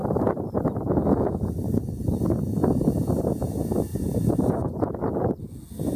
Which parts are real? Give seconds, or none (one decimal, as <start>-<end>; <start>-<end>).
0.0-3.9; 5.5-6.0